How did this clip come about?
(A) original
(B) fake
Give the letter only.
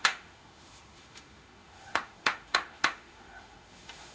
B